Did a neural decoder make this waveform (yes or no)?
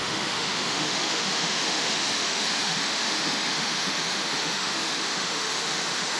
yes